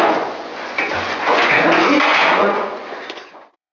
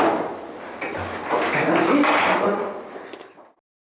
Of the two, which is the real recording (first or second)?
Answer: second